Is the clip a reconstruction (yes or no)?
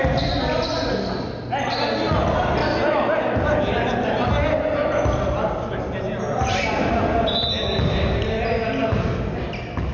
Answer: no